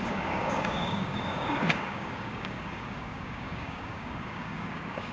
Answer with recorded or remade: remade